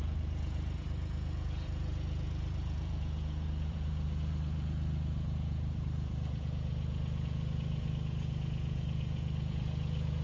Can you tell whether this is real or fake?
fake